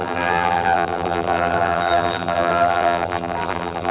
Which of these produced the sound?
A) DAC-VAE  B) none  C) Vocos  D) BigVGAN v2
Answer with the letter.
D